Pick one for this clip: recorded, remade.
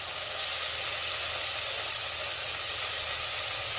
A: recorded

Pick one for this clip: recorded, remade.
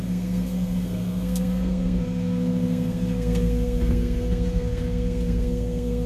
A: remade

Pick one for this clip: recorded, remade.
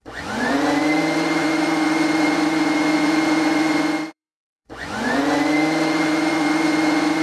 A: remade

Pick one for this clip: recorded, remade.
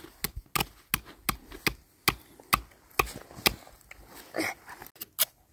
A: recorded